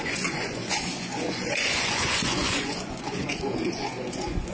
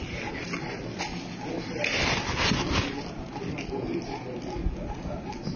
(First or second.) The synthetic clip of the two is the first